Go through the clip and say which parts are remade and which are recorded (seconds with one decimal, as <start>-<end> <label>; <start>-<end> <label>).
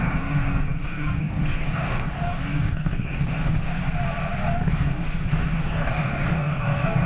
0.0-3.7 remade; 3.7-4.7 recorded; 4.7-7.1 remade